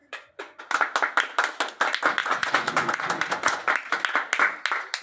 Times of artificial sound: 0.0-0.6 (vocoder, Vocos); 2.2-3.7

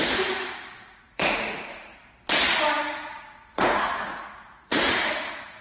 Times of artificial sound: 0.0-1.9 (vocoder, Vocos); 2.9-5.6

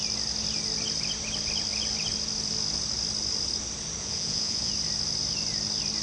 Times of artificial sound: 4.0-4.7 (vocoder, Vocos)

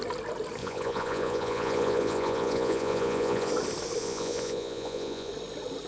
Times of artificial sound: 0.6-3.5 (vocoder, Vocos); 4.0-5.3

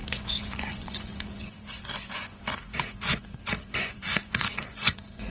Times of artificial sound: 0.0-5.3 (vocoder, Vocos)

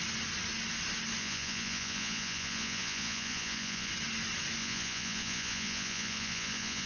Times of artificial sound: 1.2-3.9 (vocoder, Vocos); 4.6-6.9